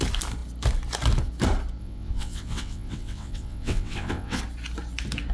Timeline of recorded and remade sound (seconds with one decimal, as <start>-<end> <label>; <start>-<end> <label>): 0.0-1.8 recorded; 1.8-4.4 remade; 4.4-5.3 recorded